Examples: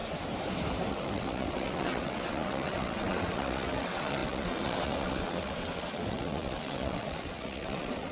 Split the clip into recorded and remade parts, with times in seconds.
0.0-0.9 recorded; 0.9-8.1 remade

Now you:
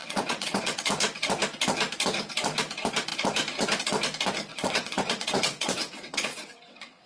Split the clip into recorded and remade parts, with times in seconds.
0.0-0.9 remade; 0.9-4.5 recorded; 4.5-7.1 remade

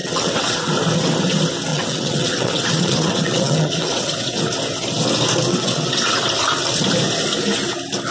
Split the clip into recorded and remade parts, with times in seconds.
0.0-0.7 remade; 0.7-1.7 recorded; 1.7-4.4 remade; 4.4-5.5 recorded; 5.5-6.2 remade; 6.2-8.1 recorded

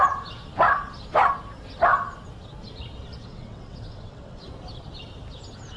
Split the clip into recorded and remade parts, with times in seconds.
0.0-3.2 recorded; 3.2-4.5 remade; 4.5-5.8 recorded